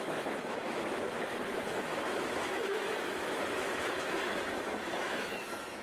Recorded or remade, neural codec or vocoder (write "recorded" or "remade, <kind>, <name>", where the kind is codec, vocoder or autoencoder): remade, autoencoder, DAC-VAE